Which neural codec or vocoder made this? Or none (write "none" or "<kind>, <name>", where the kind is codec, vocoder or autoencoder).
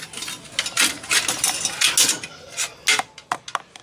none